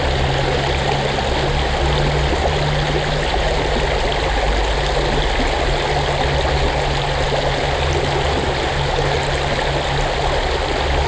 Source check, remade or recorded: recorded